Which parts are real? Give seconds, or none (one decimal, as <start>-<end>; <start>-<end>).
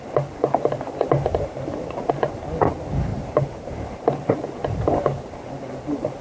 0.0-1.3; 2.1-3.1; 4.4-6.2